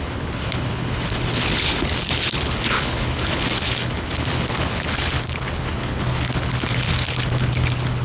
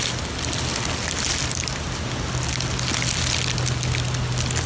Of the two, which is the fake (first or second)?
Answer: first